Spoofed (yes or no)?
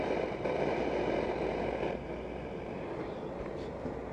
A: yes